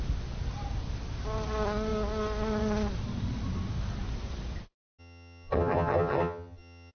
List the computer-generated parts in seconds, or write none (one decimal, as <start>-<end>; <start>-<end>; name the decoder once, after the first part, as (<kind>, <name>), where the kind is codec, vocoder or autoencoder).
5.0-6.9 (vocoder, HiFi-GAN)